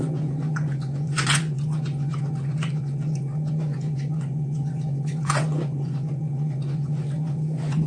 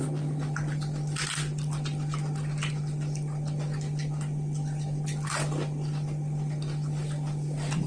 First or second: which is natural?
second